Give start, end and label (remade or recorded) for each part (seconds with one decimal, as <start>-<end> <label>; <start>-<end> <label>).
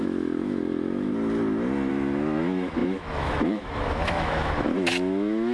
0.0-1.1 remade; 1.1-1.9 recorded; 1.9-5.5 remade